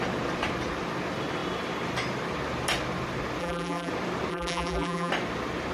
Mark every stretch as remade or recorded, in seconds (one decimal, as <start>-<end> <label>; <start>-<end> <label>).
0.0-3.4 recorded; 3.4-3.9 remade; 3.9-4.3 recorded; 4.3-5.1 remade; 5.1-5.7 recorded